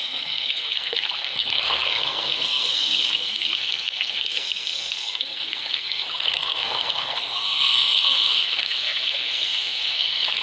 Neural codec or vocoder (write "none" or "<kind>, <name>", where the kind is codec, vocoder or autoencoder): codec, SNAC